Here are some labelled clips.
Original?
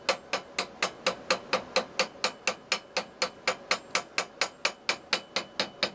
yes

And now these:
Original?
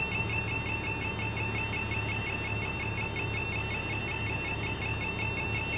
yes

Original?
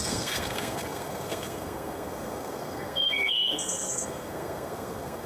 no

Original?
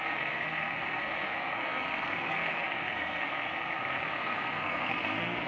no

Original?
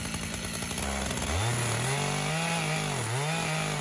yes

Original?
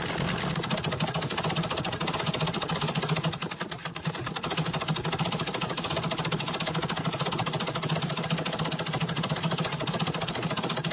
yes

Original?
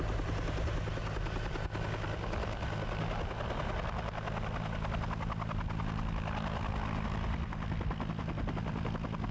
yes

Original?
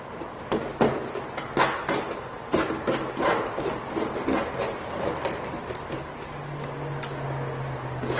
yes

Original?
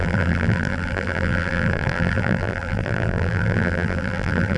no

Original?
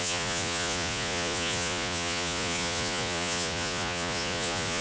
no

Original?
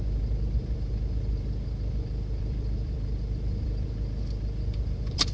no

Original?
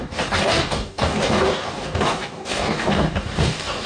no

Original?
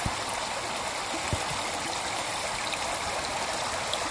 yes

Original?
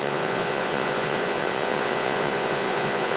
no